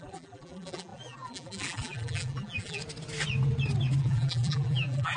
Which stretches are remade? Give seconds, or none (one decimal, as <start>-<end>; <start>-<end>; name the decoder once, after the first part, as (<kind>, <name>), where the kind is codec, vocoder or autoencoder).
0.0-2.8 (vocoder, BigVGAN v2); 4.0-5.2